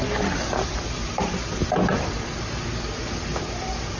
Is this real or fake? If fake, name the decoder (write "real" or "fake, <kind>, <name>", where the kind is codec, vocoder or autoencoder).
real